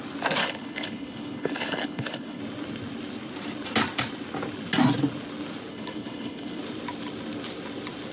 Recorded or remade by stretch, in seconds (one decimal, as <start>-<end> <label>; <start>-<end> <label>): 0.0-0.4 recorded; 0.4-2.4 remade; 2.4-5.7 recorded; 5.7-6.6 remade; 6.6-8.1 recorded